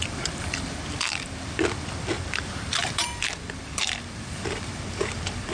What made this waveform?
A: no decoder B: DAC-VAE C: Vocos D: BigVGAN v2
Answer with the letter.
D